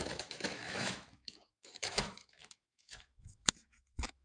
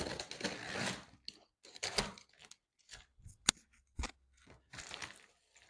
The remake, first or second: first